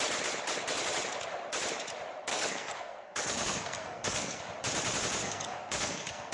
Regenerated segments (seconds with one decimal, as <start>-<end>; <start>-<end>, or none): 2.3-4.4; 5.2-6.3